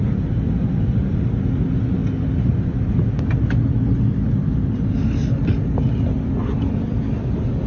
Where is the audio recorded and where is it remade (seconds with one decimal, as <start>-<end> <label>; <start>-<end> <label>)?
0.0-7.7 recorded